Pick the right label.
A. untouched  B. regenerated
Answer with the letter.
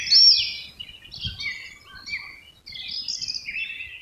A